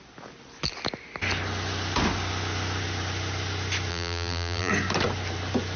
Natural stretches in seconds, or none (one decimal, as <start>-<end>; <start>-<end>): 0.0-3.9; 4.7-5.8